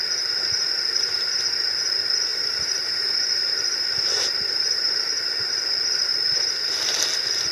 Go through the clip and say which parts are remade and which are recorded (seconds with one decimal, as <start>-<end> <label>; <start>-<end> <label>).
0.0-2.3 recorded; 2.3-5.6 remade; 5.6-7.5 recorded